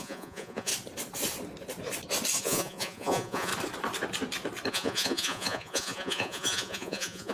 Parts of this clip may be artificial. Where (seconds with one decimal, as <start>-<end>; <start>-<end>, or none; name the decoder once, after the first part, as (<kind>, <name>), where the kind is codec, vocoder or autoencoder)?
0.0-0.7 (vocoder, Vocos); 2.4-3.5; 4.7-7.3